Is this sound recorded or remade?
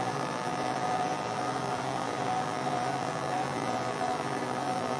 remade